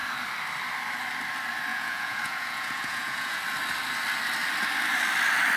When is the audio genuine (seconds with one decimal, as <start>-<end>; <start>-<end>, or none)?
0.0-1.7; 3.4-5.6